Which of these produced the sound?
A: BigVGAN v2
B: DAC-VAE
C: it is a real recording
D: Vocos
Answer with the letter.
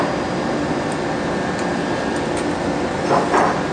C